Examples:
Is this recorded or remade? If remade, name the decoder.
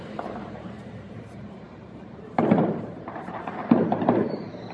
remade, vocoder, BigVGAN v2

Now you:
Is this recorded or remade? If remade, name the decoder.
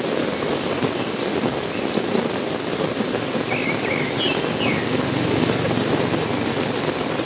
recorded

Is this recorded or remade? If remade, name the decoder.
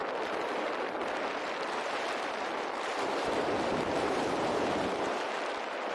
remade, vocoder, BigVGAN v2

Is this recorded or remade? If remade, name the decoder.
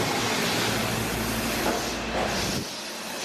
recorded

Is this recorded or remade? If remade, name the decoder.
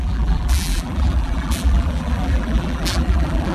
remade, vocoder, BigVGAN v2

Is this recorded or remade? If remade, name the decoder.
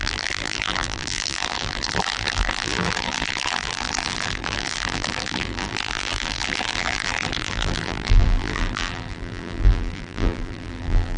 remade, vocoder, BigVGAN v2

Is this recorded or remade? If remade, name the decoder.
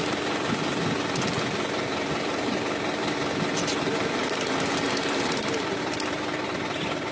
remade, vocoder, BigVGAN v2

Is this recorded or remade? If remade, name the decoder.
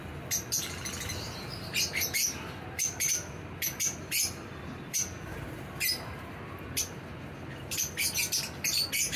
recorded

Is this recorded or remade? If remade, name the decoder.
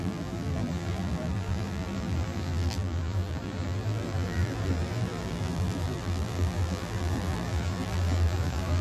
remade, vocoder, BigVGAN v2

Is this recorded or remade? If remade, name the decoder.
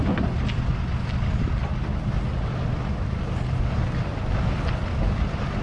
remade, vocoder, BigVGAN v2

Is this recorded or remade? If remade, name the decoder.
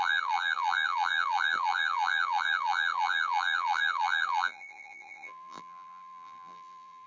remade, vocoder, BigVGAN v2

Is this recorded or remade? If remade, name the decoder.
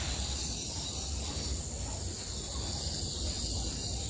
recorded